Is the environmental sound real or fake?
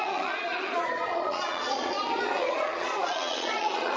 fake